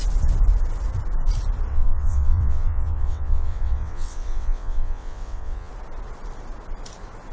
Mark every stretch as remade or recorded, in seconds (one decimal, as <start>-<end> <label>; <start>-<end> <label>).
0.0-1.7 recorded; 1.7-5.7 remade; 5.7-7.3 recorded